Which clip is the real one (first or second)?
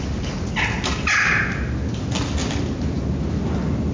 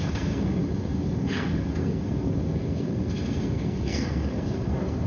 first